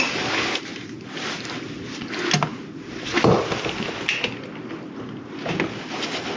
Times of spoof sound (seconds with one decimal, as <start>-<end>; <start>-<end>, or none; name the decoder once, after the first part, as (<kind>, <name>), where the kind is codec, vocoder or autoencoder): none